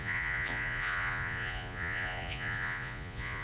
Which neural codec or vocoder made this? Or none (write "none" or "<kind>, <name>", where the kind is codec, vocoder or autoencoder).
vocoder, Vocos